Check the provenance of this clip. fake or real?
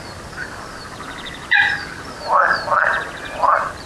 real